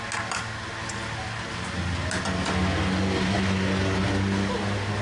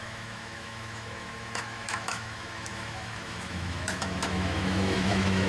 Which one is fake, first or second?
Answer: second